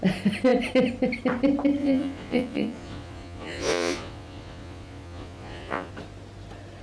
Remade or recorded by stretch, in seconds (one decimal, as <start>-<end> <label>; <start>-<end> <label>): 0.0-1.8 recorded; 1.8-5.9 remade; 5.9-6.8 recorded